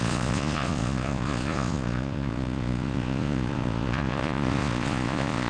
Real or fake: fake